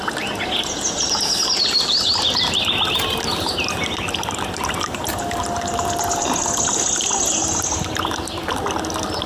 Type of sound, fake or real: real